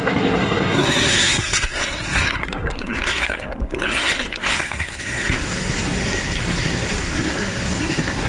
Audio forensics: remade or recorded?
remade